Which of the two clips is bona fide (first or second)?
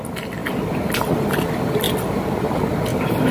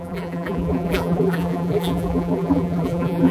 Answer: first